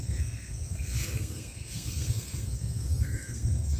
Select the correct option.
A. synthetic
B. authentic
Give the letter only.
A